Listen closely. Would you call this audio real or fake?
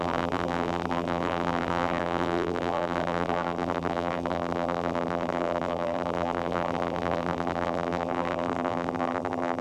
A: fake